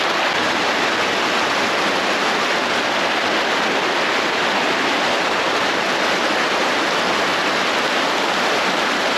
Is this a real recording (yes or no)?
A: yes